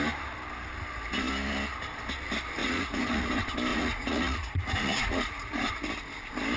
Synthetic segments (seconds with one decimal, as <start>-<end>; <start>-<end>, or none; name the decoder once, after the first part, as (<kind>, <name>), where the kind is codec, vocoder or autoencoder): 2.6-3.3 (vocoder, Vocos); 3.7-5.7